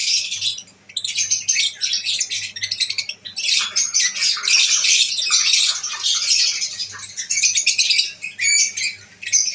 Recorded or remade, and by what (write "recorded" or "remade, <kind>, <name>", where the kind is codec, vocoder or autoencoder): recorded